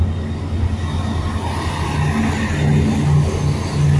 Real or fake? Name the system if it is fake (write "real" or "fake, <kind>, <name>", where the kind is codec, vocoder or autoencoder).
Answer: real